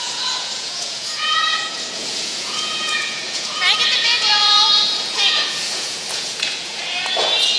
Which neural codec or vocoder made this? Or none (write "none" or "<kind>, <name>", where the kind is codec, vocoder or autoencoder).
vocoder, Vocos